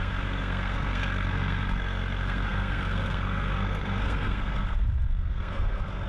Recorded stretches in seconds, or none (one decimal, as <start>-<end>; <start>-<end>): none